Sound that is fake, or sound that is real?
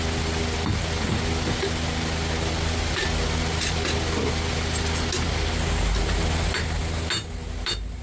real